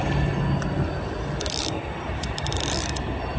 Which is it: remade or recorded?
recorded